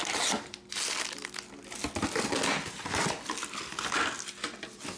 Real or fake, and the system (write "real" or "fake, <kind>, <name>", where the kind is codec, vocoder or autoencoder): real